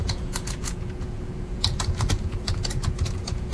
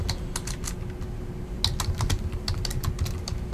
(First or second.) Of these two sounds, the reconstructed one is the first